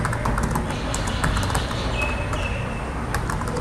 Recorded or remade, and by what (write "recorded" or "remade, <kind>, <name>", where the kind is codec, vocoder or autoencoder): recorded